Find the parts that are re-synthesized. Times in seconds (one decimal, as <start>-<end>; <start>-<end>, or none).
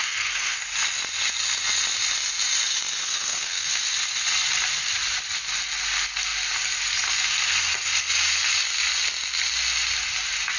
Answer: 0.0-0.6; 3.0-3.7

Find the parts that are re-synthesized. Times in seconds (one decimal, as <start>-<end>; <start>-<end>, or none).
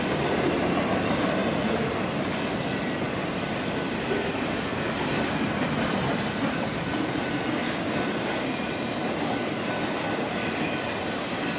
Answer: 4.7-9.7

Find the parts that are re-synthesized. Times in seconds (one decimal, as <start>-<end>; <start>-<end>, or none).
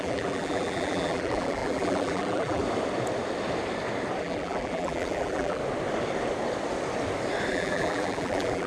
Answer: 0.0-2.6; 4.2-5.6; 7.5-8.7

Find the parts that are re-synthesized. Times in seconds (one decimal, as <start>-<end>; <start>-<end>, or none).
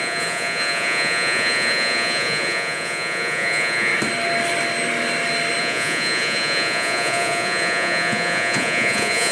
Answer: 0.0-3.9; 5.6-9.3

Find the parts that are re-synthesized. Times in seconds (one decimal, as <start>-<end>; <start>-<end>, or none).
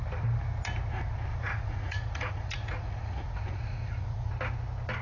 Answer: 1.3-4.3